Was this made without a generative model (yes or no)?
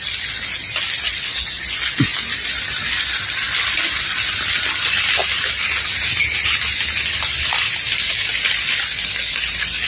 yes